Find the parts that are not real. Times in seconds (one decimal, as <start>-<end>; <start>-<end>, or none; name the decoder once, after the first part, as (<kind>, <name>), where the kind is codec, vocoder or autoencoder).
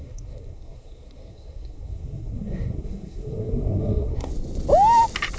0.0-4.3 (codec, SNAC)